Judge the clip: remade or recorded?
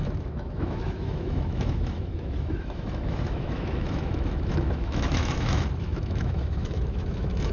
remade